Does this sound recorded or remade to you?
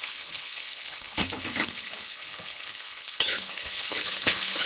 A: remade